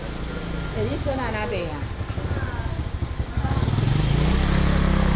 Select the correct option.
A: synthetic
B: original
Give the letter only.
B